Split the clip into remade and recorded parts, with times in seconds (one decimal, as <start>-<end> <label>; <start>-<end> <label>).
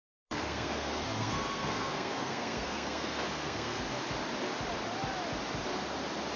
0.0-3.8 remade; 3.8-6.4 recorded